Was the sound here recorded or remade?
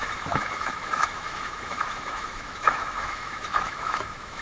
remade